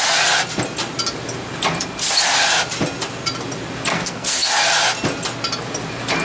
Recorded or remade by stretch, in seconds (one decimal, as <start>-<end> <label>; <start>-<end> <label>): 0.0-3.9 recorded; 3.9-4.5 remade; 4.5-6.2 recorded